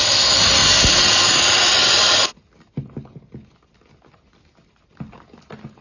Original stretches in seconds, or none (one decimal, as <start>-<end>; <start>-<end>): 0.0-5.8